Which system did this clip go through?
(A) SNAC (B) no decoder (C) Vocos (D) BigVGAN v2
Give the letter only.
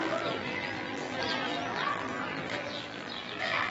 D